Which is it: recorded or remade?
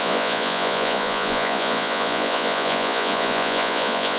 remade